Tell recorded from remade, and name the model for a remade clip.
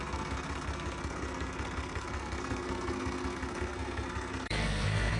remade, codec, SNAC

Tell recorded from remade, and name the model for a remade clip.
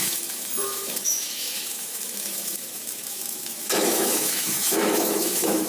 remade, autoencoder, DAC-VAE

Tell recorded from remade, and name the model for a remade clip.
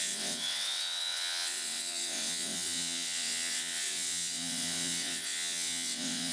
remade, vocoder, WaveNeXt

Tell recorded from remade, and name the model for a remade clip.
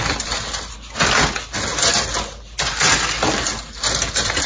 recorded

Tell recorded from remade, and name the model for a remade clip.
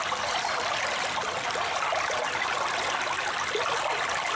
recorded